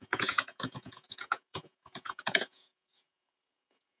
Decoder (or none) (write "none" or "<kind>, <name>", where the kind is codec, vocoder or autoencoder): vocoder, Vocos